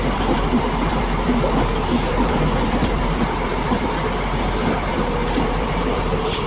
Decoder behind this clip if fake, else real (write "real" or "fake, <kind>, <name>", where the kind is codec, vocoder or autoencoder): fake, vocoder, BigVGAN v2